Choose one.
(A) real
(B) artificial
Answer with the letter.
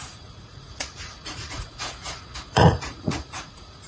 B